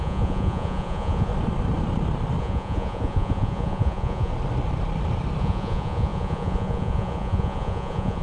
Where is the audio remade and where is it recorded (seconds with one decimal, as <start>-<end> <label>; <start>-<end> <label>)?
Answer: 0.0-1.3 remade; 1.3-2.4 recorded; 2.4-4.3 remade; 4.3-5.4 recorded; 5.4-8.2 remade